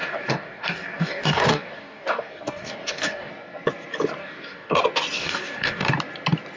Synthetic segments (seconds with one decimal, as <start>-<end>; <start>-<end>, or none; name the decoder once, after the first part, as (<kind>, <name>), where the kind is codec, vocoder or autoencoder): 0.0-3.3 (codec, DAC); 4.2-4.8; 5.2-5.9